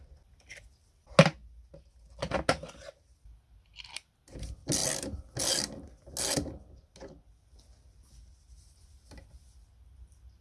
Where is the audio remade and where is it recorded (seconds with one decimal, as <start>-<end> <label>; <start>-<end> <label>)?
0.0-10.4 recorded